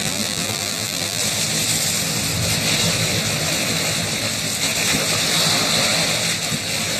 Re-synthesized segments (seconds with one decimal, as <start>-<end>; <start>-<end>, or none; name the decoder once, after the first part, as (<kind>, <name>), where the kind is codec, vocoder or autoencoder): 0.0-1.2 (vocoder, BigVGAN v2)